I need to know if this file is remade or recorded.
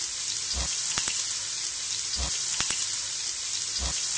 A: recorded